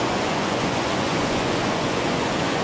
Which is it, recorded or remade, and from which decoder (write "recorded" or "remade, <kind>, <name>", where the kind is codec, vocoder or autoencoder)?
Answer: remade, vocoder, Vocos